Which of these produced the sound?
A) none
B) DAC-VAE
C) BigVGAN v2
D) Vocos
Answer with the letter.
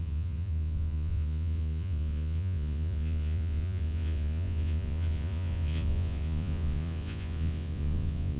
D